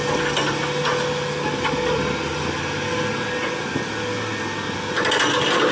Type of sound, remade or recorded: recorded